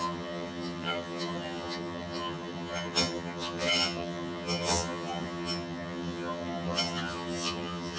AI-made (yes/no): yes